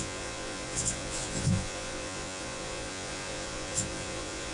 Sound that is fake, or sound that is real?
fake